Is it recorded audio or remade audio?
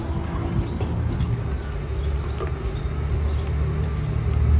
recorded